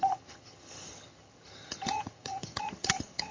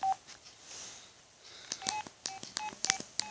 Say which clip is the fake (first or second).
first